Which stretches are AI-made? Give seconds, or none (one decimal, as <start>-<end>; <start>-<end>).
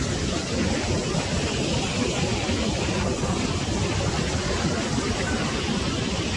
none